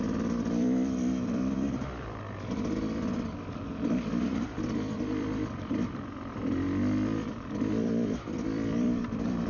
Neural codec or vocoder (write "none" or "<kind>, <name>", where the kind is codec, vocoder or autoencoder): vocoder, BigVGAN v2